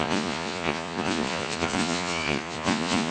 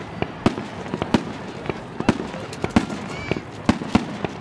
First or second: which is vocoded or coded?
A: first